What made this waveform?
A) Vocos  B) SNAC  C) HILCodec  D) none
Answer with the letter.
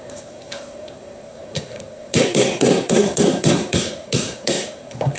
B